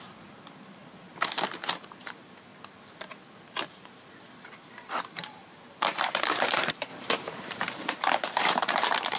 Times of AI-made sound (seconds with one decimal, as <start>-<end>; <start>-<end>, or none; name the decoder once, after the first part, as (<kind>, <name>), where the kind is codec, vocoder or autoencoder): 0.0-0.8 (vocoder, BigVGAN v2); 1.5-2.5; 5.0-9.2